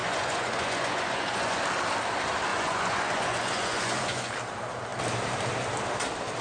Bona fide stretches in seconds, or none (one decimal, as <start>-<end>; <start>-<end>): 1.6-2.5; 4.3-6.4